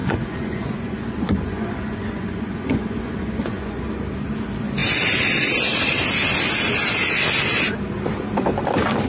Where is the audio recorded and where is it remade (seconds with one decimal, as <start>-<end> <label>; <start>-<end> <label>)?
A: 0.0-3.8 remade; 3.8-9.1 recorded